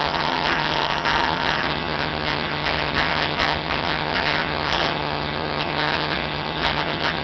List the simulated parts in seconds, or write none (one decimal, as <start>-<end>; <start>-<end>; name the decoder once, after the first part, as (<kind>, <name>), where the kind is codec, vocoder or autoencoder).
0.0-7.2 (vocoder, HiFi-GAN)